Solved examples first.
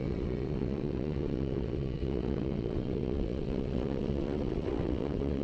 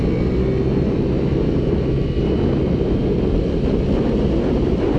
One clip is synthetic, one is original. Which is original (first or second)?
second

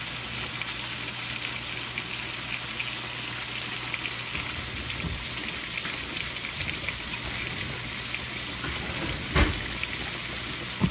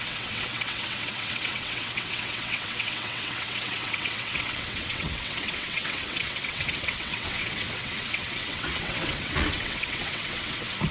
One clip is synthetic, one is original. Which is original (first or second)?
first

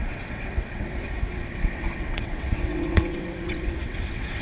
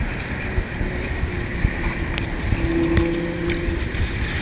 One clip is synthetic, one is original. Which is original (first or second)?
second